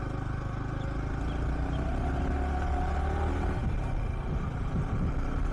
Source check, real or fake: real